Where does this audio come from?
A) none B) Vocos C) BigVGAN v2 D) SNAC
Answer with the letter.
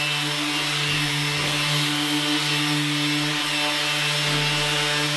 A